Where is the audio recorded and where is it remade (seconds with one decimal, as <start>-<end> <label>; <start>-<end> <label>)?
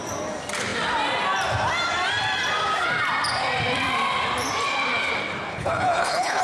0.0-5.5 recorded; 5.5-6.4 remade